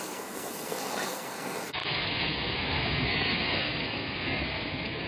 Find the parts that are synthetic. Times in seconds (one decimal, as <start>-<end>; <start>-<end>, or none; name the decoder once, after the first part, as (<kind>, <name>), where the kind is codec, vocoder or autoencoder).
0.0-5.1 (codec, SNAC)